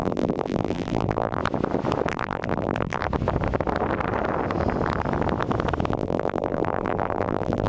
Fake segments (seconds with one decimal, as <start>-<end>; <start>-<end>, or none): 0.0-1.4; 2.1-3.0; 5.9-7.7